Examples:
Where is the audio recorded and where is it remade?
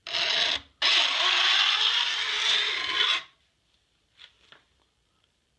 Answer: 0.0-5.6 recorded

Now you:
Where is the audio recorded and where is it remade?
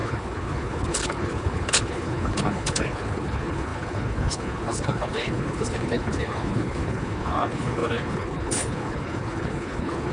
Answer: 0.0-10.1 remade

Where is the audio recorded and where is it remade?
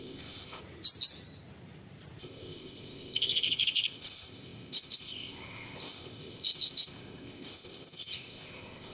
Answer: 0.0-0.6 remade; 0.6-2.2 recorded; 2.2-8.9 remade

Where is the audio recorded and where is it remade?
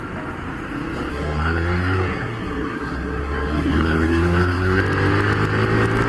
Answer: 0.0-1.1 recorded; 1.1-4.8 remade; 4.8-6.1 recorded